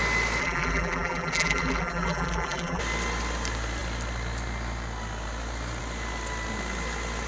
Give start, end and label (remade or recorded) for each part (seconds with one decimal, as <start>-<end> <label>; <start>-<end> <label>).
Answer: 0.0-0.4 recorded; 0.4-2.8 remade; 2.8-7.3 recorded

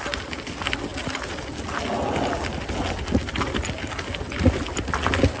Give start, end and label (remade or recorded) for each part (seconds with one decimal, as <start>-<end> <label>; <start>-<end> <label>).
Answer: 0.0-5.4 recorded

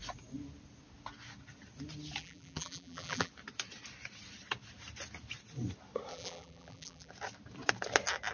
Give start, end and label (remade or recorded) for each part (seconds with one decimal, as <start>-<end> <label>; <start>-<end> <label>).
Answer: 0.0-2.2 recorded; 2.2-3.3 remade; 3.3-6.1 recorded; 6.1-7.1 remade; 7.1-8.3 recorded

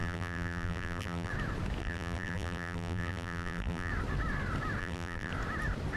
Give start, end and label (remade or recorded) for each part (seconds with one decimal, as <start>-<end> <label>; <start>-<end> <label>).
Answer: 0.0-1.3 remade; 1.3-1.8 recorded; 1.8-3.9 remade; 3.9-4.8 recorded; 4.8-5.3 remade; 5.3-6.0 recorded

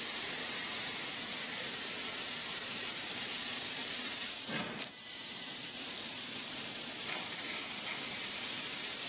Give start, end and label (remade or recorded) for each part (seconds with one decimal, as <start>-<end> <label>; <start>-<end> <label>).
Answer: 0.0-3.8 remade; 3.8-4.3 recorded; 4.3-9.1 remade